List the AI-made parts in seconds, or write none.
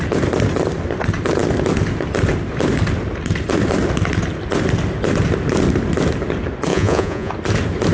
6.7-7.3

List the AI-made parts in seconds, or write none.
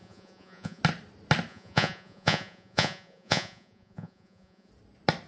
0.0-0.8; 1.5-4.7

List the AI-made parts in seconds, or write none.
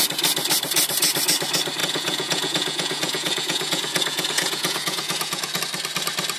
1.8-5.6